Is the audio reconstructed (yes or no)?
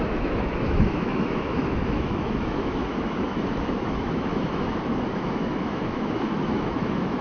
yes